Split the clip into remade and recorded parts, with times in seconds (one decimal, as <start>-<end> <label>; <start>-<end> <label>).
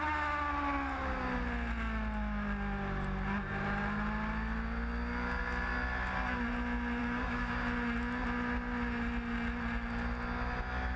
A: 0.0-7.0 recorded; 7.0-7.5 remade; 7.5-11.0 recorded